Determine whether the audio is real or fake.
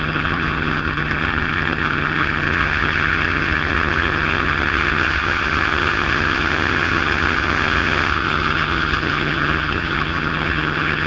fake